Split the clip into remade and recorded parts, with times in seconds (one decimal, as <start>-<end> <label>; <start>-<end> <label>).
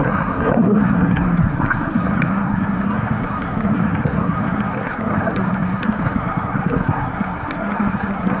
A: 0.0-8.4 remade